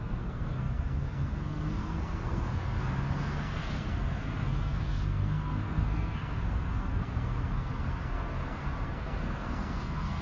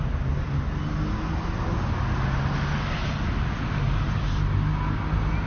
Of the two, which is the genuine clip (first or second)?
second